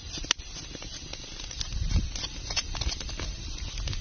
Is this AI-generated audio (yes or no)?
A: no